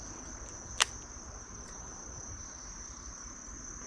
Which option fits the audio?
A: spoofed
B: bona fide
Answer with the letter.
B